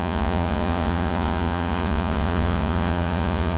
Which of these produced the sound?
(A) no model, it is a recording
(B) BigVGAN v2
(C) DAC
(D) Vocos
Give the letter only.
D